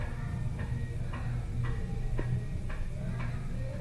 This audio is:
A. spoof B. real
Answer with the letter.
B